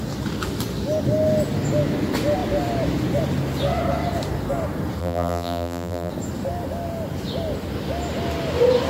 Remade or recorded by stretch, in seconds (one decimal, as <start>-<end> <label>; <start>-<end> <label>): 0.0-5.0 recorded; 5.0-6.1 remade; 6.1-8.9 recorded